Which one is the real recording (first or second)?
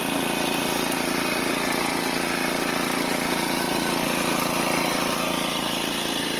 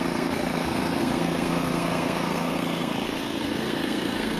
first